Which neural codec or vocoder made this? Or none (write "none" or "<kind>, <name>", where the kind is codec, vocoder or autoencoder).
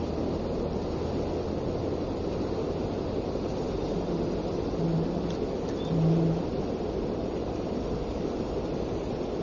none